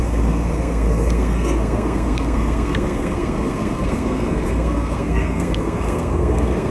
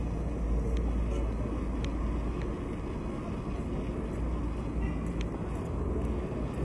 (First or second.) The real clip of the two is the second